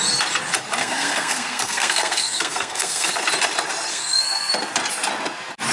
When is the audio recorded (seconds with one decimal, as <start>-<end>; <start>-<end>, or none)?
0.0-0.8; 3.1-3.9; 4.5-5.7